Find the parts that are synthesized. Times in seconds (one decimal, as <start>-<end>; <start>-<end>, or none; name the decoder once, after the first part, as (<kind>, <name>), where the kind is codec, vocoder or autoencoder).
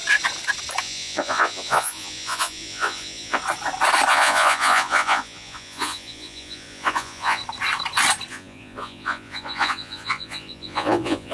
0.8-3.4 (vocoder, Vocos); 4.1-7.4; 8.3-11.3